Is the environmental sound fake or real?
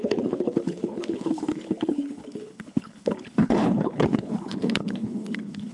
fake